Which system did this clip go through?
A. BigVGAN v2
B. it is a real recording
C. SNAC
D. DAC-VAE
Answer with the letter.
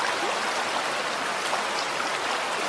B